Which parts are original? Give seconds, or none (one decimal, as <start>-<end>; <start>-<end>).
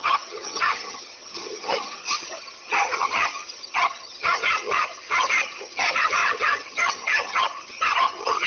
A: none